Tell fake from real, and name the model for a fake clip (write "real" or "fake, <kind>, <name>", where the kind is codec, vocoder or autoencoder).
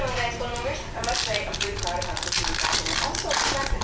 real